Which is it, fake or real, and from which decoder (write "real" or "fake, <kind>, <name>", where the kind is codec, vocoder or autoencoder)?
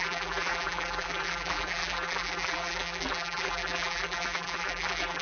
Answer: fake, vocoder, BigVGAN v2